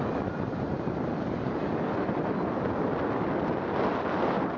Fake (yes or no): no